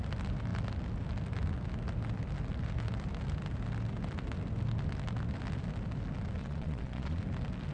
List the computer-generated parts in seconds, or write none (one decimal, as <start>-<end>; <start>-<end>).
6.4-7.2